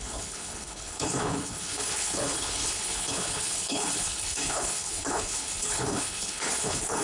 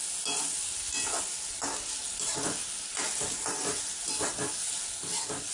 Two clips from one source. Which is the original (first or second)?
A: second